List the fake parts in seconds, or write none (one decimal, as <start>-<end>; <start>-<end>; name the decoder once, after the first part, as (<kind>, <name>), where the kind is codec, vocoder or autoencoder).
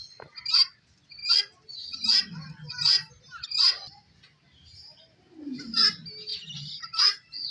1.2-3.1 (vocoder, BigVGAN v2); 6.3-6.9